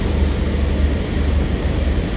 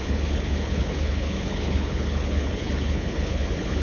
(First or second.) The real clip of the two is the first